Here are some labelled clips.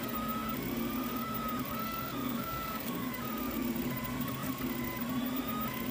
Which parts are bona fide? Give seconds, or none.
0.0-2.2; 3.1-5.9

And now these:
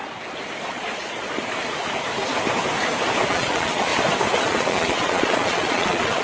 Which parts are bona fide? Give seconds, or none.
0.0-0.6; 1.0-3.3; 3.9-4.4

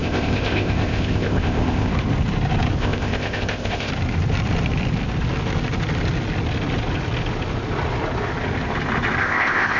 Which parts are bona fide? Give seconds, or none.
1.9-2.8; 3.9-9.2